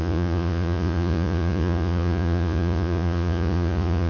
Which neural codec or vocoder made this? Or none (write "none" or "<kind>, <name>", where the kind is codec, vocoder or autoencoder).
vocoder, Vocos